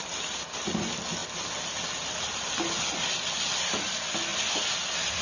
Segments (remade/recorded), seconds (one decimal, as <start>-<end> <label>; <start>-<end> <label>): 0.0-5.2 recorded